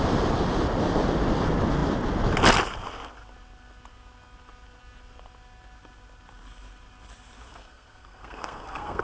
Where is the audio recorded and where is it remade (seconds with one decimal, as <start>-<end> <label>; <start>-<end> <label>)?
0.0-7.5 recorded; 7.5-9.0 remade